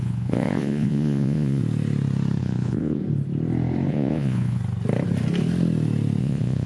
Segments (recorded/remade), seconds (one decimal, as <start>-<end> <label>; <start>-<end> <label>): 0.0-1.6 remade; 1.6-2.4 recorded; 2.4-3.0 remade; 3.0-3.9 recorded; 3.9-4.6 remade; 4.6-6.2 recorded; 6.2-6.7 remade